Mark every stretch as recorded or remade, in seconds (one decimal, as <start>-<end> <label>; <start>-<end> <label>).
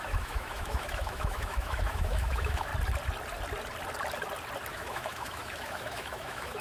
0.0-2.7 remade; 2.7-4.7 recorded; 4.7-6.6 remade